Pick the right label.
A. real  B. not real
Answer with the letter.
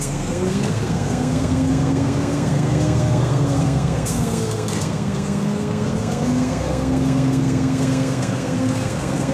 B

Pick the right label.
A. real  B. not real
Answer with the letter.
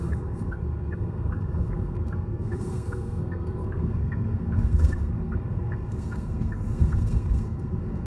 B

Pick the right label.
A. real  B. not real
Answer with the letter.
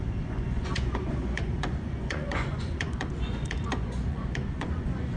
B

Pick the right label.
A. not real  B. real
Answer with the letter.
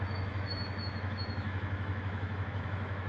A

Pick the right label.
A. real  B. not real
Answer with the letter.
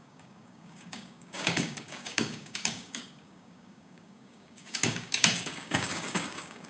B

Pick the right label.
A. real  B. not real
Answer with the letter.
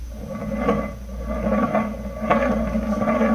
A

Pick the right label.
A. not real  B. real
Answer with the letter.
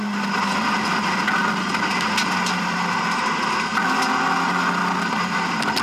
B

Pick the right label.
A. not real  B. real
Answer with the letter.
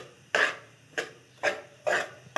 B